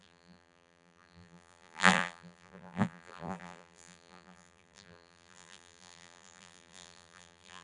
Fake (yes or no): yes